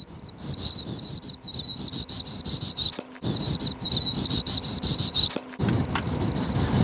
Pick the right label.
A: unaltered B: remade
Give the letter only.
A